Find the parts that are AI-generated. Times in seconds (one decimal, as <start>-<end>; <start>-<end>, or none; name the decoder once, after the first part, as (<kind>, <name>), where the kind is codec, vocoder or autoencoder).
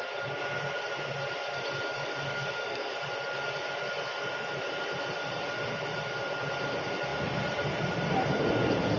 1.9-3.0 (codec, DAC)